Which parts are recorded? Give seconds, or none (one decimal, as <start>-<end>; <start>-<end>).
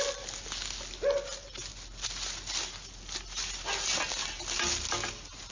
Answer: 0.0-5.5